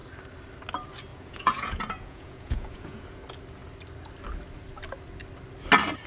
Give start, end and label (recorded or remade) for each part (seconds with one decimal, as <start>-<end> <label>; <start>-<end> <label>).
0.0-1.1 recorded; 1.1-3.2 remade; 3.2-6.1 recorded